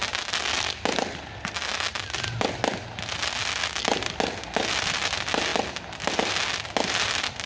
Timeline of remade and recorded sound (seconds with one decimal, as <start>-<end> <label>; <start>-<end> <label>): 0.0-7.5 recorded